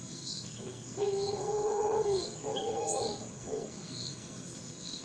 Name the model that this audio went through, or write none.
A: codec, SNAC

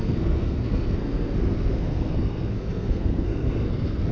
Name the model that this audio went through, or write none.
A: codec, SNAC